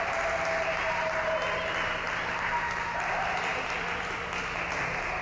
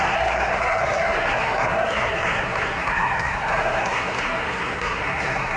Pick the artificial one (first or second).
second